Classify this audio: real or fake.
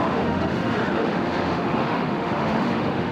fake